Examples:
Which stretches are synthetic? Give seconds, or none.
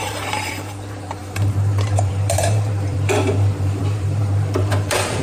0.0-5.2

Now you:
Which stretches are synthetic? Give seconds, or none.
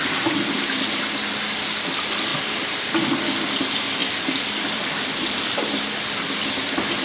2.3-2.9; 4.0-4.8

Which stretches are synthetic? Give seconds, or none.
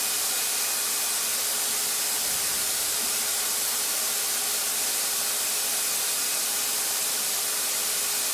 2.3-4.2; 6.3-7.6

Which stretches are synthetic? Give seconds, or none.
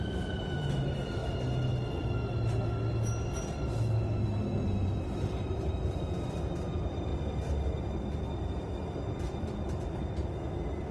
0.0-1.2; 4.7-7.1; 7.9-10.2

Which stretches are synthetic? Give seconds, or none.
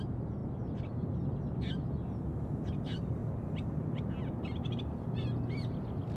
none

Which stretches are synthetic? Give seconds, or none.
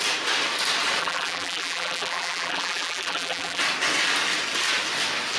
1.0-3.6